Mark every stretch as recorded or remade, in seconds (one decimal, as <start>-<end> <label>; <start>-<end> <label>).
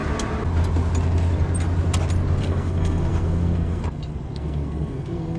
0.0-2.4 recorded; 2.4-5.4 remade